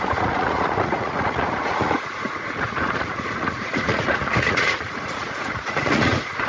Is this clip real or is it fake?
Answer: fake